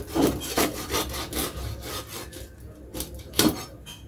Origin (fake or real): real